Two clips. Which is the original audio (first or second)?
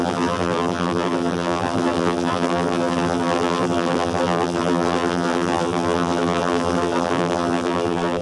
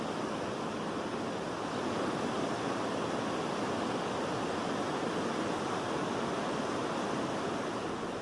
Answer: second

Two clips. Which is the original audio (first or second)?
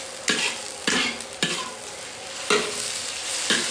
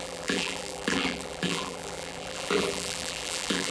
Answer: first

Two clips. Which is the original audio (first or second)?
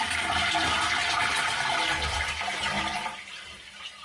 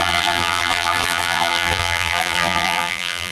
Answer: first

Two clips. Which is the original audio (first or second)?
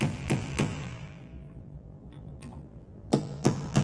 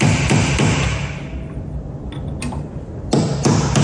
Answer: second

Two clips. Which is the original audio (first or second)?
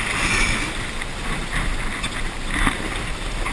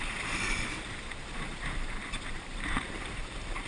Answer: first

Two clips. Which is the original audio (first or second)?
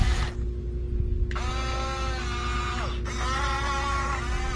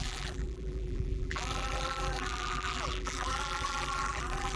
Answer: first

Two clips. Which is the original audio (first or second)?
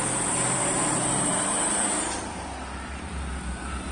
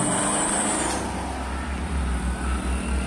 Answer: second